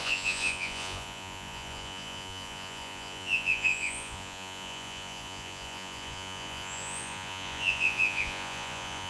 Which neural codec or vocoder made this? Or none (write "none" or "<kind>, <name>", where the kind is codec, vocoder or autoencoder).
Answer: vocoder, Vocos